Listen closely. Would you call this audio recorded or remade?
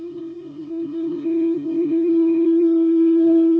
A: remade